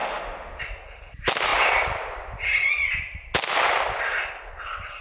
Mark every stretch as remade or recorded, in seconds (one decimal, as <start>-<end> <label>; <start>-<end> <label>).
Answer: 0.0-0.6 remade; 0.6-5.0 recorded